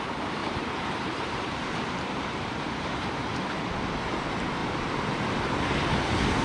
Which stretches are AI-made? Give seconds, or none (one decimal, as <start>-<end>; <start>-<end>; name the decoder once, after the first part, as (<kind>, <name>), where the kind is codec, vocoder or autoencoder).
0.4-3.4 (vocoder, BigVGAN v2); 4.6-5.7